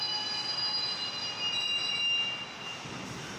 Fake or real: real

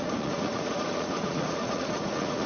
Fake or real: fake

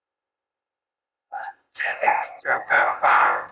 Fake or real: fake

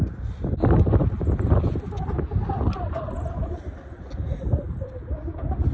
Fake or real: real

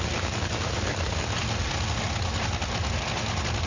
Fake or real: real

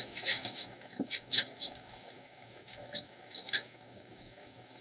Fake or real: fake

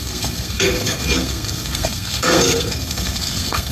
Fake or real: fake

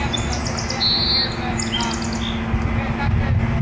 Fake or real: real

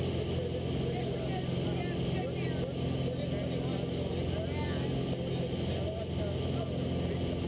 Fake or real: real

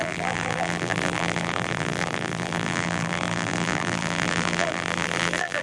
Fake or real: fake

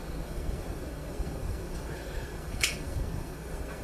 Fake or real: fake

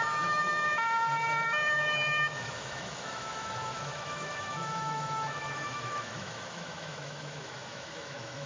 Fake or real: fake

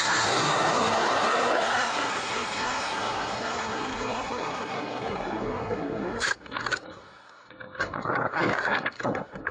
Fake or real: fake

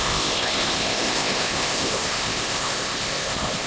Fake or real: fake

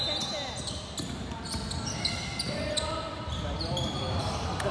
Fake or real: real